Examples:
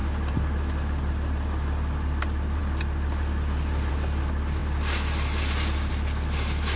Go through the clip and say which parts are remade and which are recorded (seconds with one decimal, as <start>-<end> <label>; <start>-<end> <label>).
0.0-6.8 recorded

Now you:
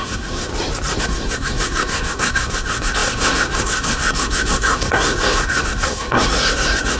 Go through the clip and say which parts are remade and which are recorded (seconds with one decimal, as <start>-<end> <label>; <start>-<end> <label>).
0.0-0.5 remade; 0.5-1.0 recorded; 1.0-7.0 remade

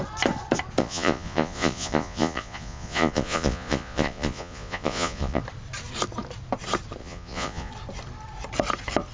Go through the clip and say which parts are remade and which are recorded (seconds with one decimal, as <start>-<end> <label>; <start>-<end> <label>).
0.0-0.8 recorded; 0.8-5.4 remade; 5.4-7.0 recorded; 7.0-7.7 remade; 7.7-9.1 recorded